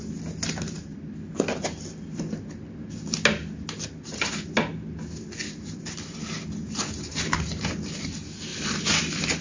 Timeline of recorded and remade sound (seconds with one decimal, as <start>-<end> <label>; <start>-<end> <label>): 0.0-8.5 recorded; 8.5-9.0 remade; 9.0-9.4 recorded

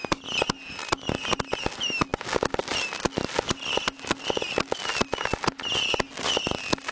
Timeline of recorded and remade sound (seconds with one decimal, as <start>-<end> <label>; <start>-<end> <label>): 0.0-6.9 recorded